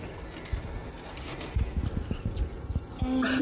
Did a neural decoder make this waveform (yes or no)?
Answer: no